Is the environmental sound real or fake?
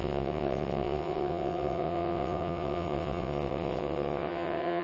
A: fake